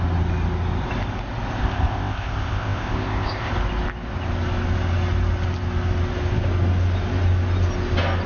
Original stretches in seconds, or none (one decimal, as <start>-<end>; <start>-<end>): 0.0-1.6; 3.5-8.3